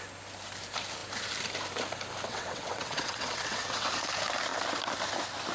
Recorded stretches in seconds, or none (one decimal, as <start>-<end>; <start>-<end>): 0.0-2.3; 3.9-5.5